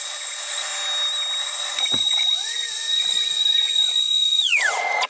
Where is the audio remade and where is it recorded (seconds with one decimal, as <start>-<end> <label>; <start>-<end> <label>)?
0.0-0.7 remade; 0.7-1.4 recorded; 1.4-5.1 remade